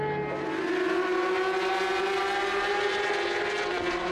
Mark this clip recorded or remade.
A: recorded